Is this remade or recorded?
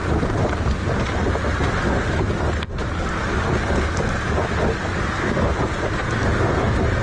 recorded